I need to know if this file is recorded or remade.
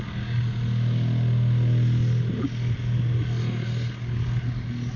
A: recorded